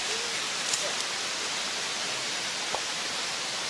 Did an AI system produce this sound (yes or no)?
no